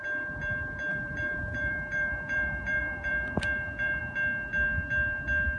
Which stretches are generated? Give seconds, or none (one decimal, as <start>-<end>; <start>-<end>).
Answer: 0.9-4.0